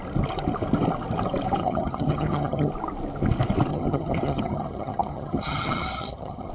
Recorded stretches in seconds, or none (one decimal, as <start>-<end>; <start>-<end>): 0.0-1.6; 2.7-3.7